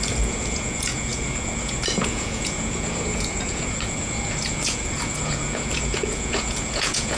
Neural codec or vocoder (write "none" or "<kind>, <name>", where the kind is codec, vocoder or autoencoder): vocoder, Vocos